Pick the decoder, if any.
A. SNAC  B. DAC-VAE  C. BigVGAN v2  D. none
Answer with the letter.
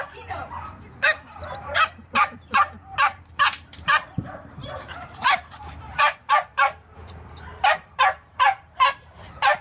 C